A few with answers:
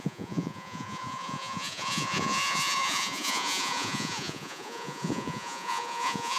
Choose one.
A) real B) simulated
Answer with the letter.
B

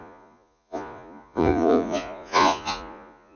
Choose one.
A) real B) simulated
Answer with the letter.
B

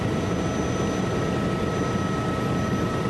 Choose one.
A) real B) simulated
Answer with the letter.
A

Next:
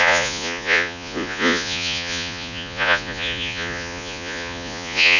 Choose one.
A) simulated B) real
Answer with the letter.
A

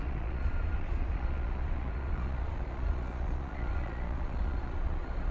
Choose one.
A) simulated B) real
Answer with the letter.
A